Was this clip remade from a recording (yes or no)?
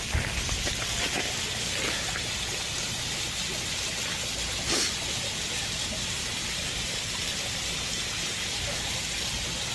yes